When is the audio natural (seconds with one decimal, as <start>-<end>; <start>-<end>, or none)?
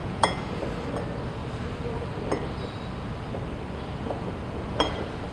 0.6-5.3